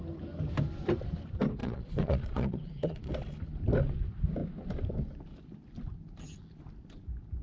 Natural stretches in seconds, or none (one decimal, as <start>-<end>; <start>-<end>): 0.0-1.6; 3.1-7.4